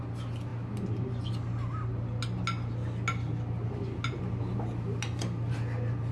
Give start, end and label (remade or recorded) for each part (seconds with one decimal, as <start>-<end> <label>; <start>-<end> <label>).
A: 0.0-6.1 recorded